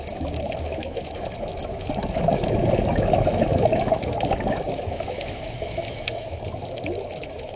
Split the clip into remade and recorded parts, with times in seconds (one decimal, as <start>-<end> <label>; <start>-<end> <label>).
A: 0.0-7.6 remade